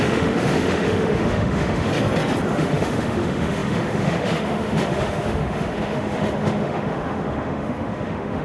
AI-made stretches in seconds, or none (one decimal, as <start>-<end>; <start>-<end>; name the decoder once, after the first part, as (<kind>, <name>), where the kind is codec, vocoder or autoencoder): 0.0-1.9 (autoencoder, DAC-VAE); 2.5-8.4